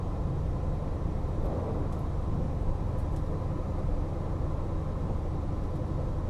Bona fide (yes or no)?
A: yes